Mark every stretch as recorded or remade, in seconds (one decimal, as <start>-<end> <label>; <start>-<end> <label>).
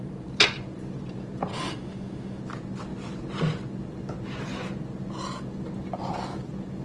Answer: 0.0-1.5 recorded; 1.5-2.4 remade; 2.4-6.8 recorded